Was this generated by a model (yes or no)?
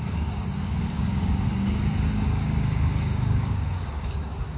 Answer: yes